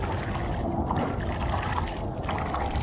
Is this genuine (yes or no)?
yes